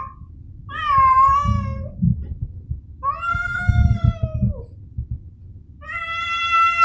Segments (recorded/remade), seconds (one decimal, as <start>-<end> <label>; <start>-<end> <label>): 0.0-3.3 recorded; 3.3-4.5 remade; 4.5-6.8 recorded